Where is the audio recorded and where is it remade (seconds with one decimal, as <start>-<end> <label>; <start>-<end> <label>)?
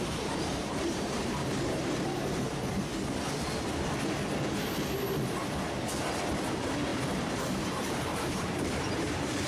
0.0-2.9 remade; 2.9-6.0 recorded; 6.0-9.5 remade